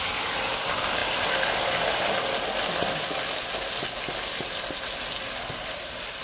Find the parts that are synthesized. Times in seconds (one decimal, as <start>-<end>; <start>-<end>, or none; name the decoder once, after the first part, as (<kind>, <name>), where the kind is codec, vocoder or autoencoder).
none